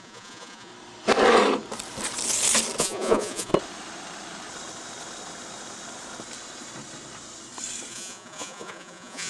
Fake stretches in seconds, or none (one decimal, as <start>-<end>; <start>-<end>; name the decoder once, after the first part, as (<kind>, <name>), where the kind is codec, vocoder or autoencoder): 0.0-0.7 (vocoder, Vocos); 2.8-3.5; 7.9-9.3